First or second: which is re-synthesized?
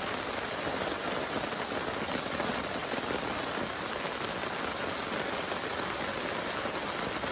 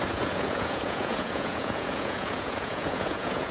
second